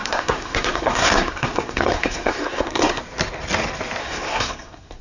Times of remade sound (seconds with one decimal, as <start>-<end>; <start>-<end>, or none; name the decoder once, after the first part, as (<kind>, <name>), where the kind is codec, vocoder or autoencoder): 0.0-3.0 (codec, SNAC); 4.0-5.0